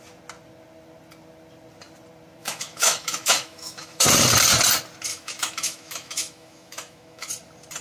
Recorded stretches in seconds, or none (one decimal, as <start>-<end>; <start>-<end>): 0.0-2.4; 4.1-5.1; 7.3-7.8